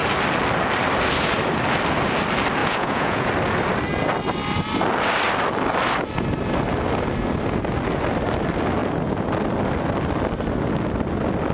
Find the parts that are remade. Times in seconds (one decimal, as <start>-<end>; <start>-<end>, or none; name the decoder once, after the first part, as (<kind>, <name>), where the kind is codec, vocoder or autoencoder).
2.6-3.3 (vocoder, Vocos)